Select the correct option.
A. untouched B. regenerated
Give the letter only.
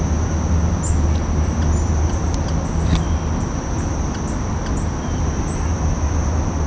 A